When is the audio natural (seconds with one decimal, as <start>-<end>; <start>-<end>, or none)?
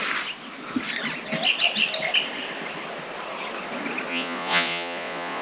0.0-4.1